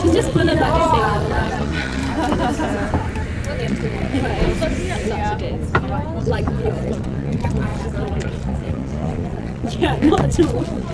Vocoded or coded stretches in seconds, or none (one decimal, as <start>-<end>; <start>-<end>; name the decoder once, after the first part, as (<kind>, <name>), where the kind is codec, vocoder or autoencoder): 0.0-2.0 (vocoder, Vocos); 3.6-4.3; 6.2-10.9